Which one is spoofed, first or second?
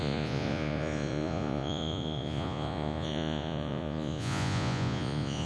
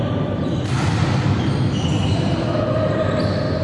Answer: first